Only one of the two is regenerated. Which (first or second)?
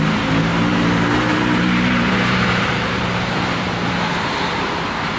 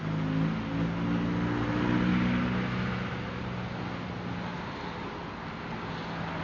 first